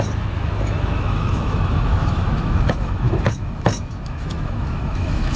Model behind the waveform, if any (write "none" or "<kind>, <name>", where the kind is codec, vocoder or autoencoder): autoencoder, DAC-VAE